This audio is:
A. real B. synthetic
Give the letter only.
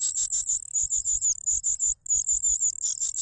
A